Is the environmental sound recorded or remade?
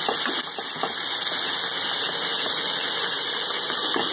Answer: recorded